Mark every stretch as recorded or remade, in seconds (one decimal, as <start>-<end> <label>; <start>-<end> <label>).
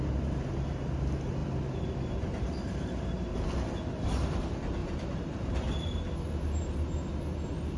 0.0-1.4 recorded; 1.4-3.3 remade; 3.3-4.8 recorded; 4.8-5.5 remade; 5.5-7.8 recorded